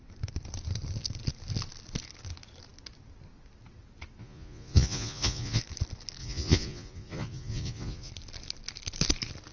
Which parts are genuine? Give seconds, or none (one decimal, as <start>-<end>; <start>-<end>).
0.0-4.2; 5.6-6.2; 8.1-9.5